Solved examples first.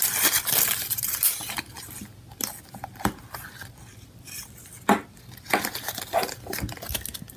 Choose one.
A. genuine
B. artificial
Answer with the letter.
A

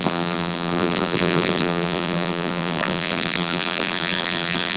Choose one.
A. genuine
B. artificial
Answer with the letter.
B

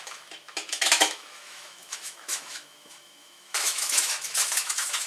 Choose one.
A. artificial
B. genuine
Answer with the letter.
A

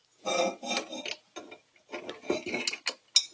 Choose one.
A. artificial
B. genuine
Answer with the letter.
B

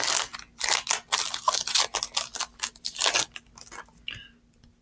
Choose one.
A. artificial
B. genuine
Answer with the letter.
B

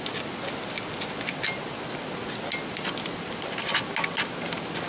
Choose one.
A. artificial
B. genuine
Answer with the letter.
B